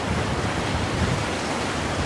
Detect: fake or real real